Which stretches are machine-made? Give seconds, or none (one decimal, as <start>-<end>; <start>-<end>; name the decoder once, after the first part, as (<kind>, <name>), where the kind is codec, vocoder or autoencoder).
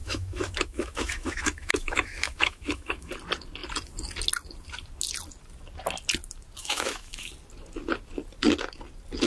0.0-3.1 (autoencoder, DAC-VAE); 6.6-7.3